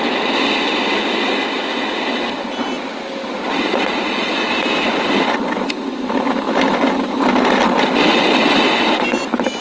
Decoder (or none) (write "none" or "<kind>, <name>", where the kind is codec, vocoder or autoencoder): none